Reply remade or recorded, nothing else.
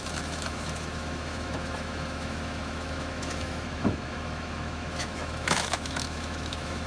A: remade